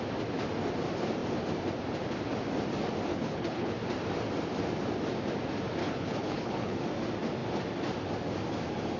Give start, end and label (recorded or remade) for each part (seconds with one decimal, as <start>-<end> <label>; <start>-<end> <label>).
0.0-3.1 recorded; 3.1-3.7 remade; 3.7-5.8 recorded; 5.8-6.8 remade; 6.8-9.0 recorded